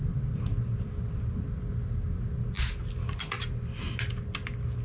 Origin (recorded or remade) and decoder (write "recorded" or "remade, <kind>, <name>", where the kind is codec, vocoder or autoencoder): recorded